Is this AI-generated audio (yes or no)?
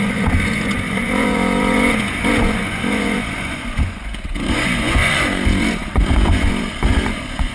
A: yes